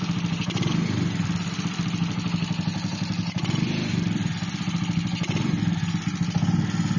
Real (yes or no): yes